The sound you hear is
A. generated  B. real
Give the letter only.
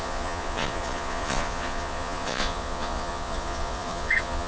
A